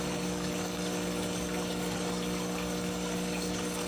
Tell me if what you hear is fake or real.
fake